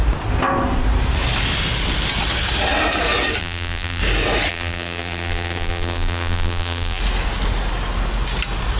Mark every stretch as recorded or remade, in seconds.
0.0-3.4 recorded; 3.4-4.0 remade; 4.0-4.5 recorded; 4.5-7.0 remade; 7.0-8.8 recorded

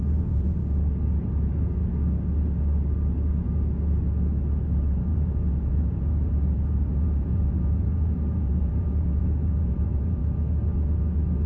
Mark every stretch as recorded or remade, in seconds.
0.0-0.6 remade; 0.6-1.2 recorded; 1.2-1.8 remade; 1.8-4.6 recorded; 4.6-10.2 remade; 10.2-11.5 recorded

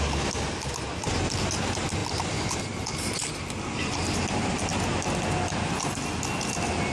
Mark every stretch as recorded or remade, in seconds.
0.0-2.0 recorded; 2.0-3.3 remade; 3.3-6.9 recorded

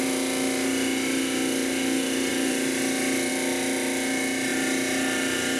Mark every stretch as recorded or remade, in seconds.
0.0-2.3 recorded; 2.3-3.3 remade; 3.3-5.6 recorded

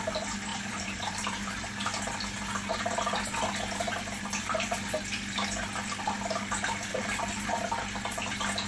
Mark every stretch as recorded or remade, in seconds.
0.0-0.5 recorded; 0.5-1.9 remade; 1.9-8.7 recorded

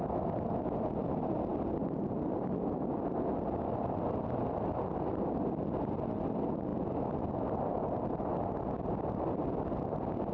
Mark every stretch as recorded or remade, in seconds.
0.0-10.3 recorded

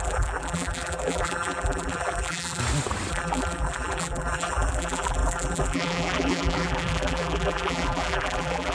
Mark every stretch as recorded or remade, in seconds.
0.0-2.6 remade; 2.6-3.1 recorded; 3.1-8.7 remade

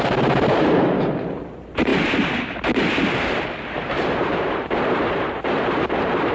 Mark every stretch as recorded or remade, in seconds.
0.0-6.3 remade